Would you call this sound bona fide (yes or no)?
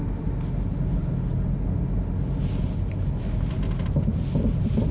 yes